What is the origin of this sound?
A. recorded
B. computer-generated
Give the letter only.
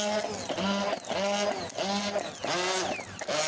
A